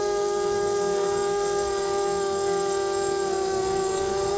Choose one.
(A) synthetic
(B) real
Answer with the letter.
A